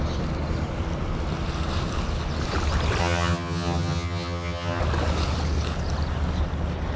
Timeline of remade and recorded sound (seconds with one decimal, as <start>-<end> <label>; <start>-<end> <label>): 0.0-3.0 recorded; 3.0-4.8 remade; 4.8-7.0 recorded